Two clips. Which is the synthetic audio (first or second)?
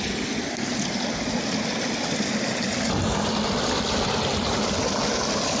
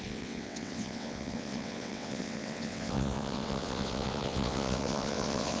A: second